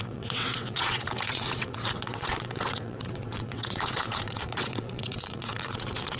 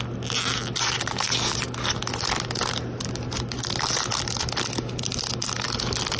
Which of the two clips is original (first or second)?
second